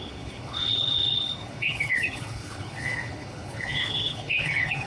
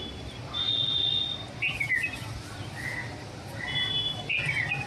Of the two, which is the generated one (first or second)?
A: first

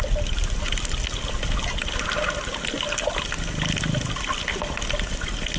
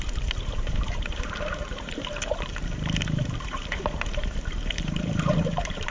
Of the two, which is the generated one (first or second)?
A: second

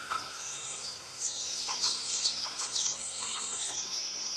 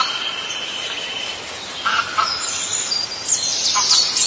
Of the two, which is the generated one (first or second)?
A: first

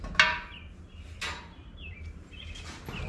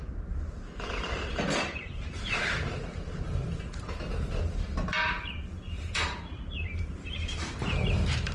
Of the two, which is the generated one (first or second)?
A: second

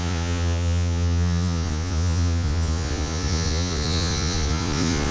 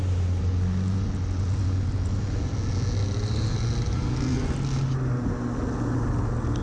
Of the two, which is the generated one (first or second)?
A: first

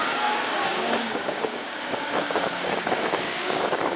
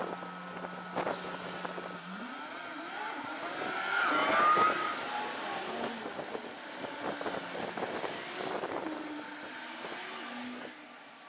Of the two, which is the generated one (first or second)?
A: first